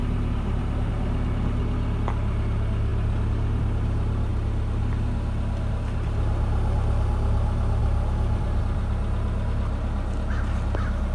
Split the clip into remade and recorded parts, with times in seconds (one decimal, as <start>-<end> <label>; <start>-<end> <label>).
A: 0.0-0.9 remade; 0.9-7.8 recorded; 7.8-8.6 remade; 8.6-11.1 recorded